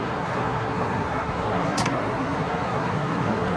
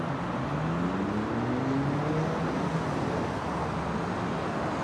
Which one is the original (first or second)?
second